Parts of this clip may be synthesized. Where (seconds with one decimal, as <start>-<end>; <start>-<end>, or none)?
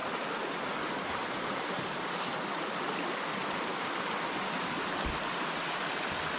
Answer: 0.0-2.3